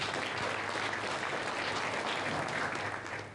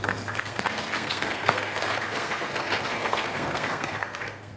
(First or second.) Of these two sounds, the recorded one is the first